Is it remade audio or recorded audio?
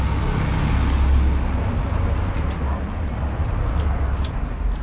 recorded